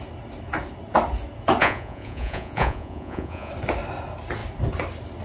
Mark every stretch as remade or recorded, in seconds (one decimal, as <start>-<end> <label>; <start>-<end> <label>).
0.0-1.6 recorded; 1.6-3.5 remade; 3.5-5.2 recorded